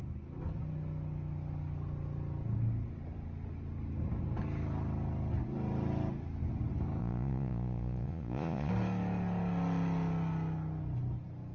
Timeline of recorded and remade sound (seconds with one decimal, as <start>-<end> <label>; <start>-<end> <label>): 0.0-7.0 recorded; 7.0-8.7 remade; 8.7-11.5 recorded